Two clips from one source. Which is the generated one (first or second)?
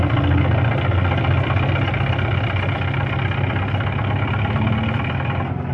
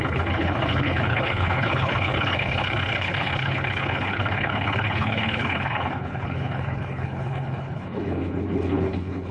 second